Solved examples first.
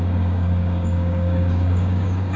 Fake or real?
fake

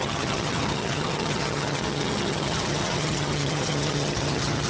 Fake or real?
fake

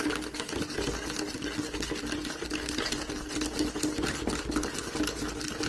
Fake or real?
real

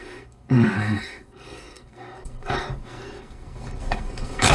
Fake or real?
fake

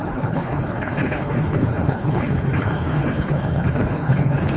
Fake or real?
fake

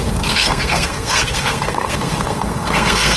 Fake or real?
fake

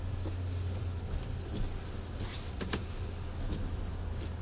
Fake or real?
real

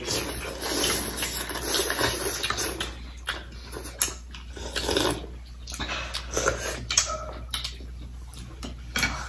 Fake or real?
real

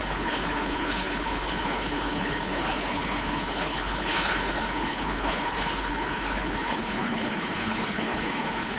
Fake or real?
fake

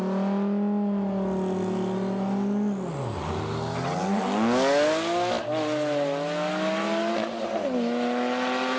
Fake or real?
real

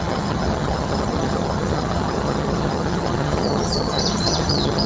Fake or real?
fake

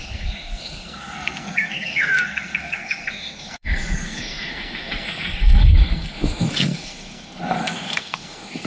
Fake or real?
fake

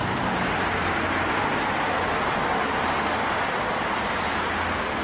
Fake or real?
real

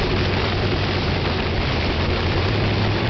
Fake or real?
fake